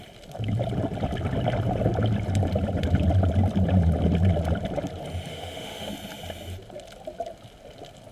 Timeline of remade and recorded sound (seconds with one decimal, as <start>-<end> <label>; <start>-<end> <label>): 0.0-5.3 recorded; 5.3-5.9 remade; 5.9-8.1 recorded